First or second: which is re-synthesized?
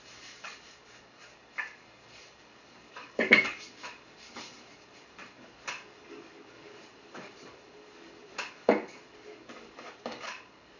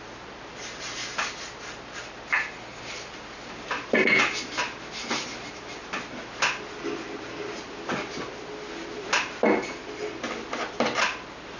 first